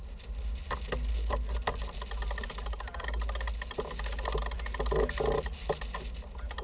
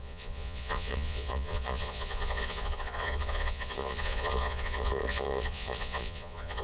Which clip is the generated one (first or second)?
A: second